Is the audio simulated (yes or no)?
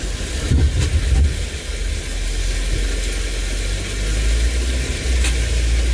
no